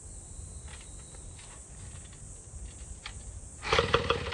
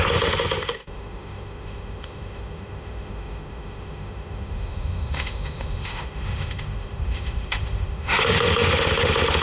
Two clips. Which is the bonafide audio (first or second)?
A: first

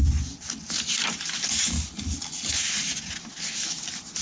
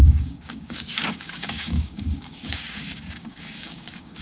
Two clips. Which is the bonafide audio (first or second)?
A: first